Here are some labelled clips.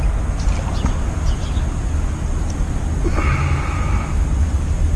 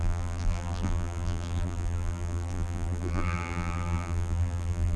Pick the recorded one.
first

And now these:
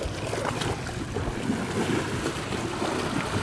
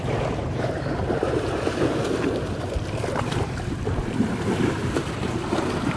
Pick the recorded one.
first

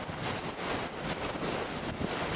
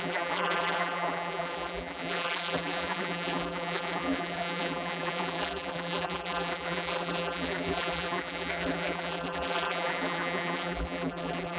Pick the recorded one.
first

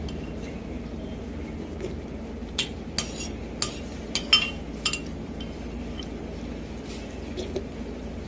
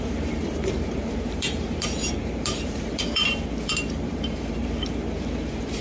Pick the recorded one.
first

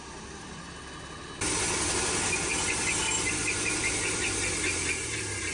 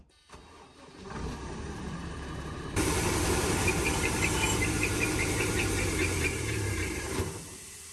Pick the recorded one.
first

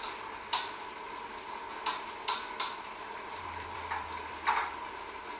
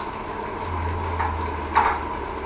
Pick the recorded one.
second